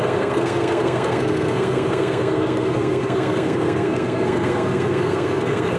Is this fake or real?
fake